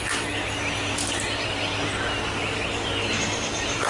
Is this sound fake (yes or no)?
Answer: no